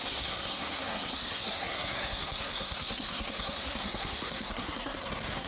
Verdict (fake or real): fake